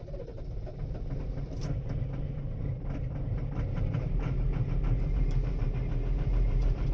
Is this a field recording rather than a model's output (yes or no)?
no